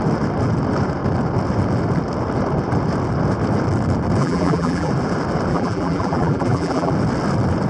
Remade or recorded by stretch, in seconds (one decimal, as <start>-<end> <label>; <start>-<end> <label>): 0.0-4.2 recorded; 4.2-4.9 remade; 4.9-5.5 recorded; 5.5-6.9 remade; 6.9-7.7 recorded